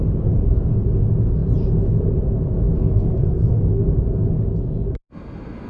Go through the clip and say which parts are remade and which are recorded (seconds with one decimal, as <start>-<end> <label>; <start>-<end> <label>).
0.0-2.8 recorded; 2.8-3.8 remade; 3.8-5.7 recorded